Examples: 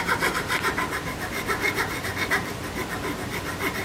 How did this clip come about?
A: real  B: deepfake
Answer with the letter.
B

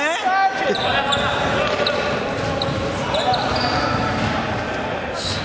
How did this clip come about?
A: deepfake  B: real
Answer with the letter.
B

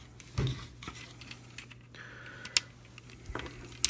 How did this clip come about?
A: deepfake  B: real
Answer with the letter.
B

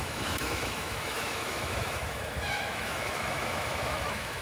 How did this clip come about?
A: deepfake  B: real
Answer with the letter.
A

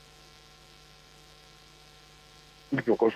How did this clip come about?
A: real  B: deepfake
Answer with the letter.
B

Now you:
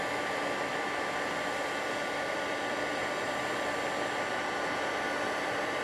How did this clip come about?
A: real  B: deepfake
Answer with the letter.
A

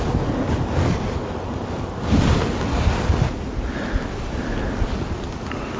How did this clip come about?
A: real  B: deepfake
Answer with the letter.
A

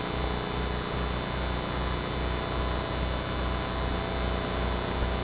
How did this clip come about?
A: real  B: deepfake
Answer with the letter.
A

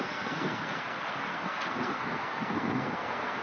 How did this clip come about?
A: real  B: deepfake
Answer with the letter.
B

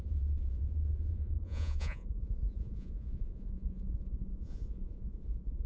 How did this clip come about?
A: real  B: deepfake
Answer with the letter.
B